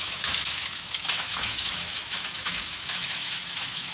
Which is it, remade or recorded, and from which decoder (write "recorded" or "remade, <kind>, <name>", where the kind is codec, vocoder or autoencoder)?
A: remade, autoencoder, DAC-VAE